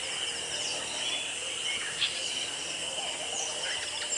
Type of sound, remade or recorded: recorded